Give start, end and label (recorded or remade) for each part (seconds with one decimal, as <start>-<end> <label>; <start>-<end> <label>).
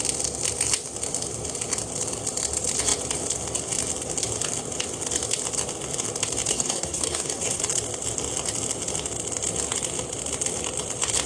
0.0-6.5 recorded; 6.5-7.6 remade; 7.6-11.3 recorded